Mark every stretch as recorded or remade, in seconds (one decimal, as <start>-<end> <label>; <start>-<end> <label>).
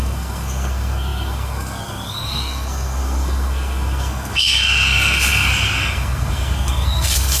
0.0-7.4 remade